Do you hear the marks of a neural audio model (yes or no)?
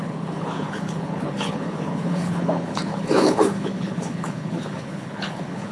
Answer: yes